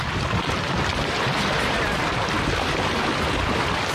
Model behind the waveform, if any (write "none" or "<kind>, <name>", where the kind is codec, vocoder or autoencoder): none